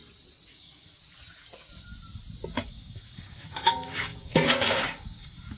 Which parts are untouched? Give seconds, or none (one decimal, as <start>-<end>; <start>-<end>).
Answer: 0.0-0.5; 1.0-2.5